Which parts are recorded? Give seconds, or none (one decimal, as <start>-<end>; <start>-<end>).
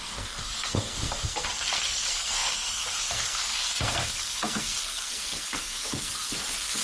none